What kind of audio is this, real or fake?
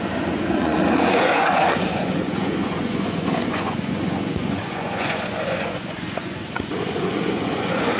fake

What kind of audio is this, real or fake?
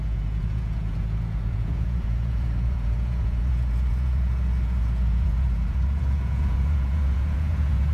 fake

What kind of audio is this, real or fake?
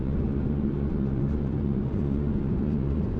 fake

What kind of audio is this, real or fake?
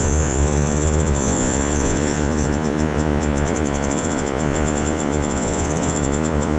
fake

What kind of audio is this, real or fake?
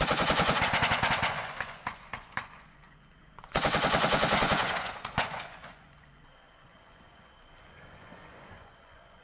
fake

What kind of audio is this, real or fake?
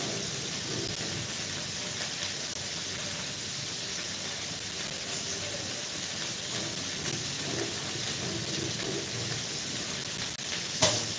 real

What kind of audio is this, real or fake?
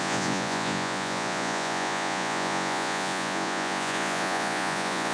fake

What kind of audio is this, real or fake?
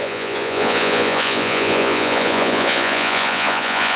fake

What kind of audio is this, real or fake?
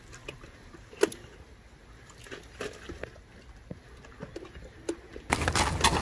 real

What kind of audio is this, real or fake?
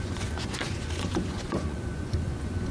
fake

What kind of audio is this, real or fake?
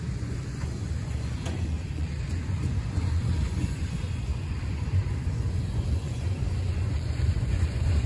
fake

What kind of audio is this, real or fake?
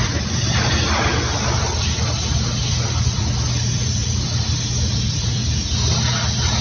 real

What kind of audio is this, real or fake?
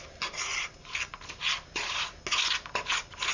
real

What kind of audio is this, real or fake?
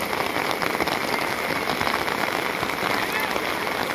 real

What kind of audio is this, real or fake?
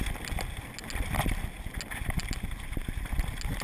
real